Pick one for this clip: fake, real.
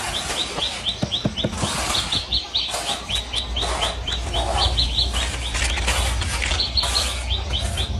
real